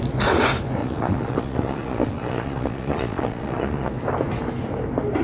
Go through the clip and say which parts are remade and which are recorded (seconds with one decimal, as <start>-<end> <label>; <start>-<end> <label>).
0.0-0.8 recorded; 0.8-3.9 remade; 3.9-5.2 recorded

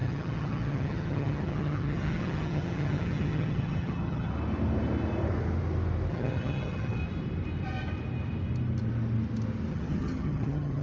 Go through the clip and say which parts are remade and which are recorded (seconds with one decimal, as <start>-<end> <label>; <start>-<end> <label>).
0.0-4.3 remade; 4.3-6.1 recorded; 6.1-7.0 remade; 7.0-9.7 recorded; 9.7-10.8 remade

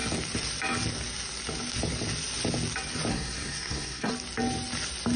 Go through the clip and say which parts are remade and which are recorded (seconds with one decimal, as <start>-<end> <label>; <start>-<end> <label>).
0.0-3.1 recorded; 3.1-4.1 remade; 4.1-5.2 recorded

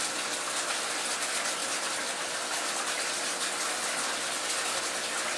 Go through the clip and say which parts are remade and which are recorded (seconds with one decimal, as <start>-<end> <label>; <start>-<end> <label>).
0.0-5.4 recorded

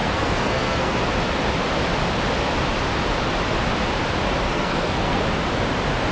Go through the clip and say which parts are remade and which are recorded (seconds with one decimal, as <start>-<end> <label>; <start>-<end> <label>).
0.0-1.0 remade; 1.0-4.5 recorded; 4.5-5.2 remade; 5.2-6.1 recorded

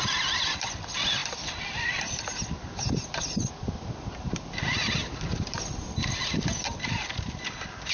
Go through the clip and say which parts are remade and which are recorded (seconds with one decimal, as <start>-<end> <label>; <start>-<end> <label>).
0.0-7.9 recorded

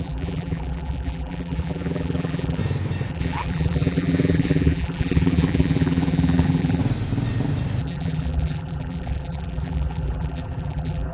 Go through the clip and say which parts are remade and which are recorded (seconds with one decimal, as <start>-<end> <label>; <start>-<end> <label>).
0.0-2.6 remade; 2.6-3.1 recorded; 3.1-6.8 remade; 6.8-7.8 recorded; 7.8-11.1 remade

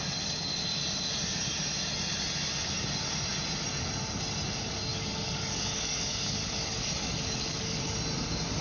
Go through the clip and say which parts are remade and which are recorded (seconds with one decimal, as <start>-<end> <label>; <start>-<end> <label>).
0.0-4.9 recorded; 4.9-7.8 remade; 7.8-8.6 recorded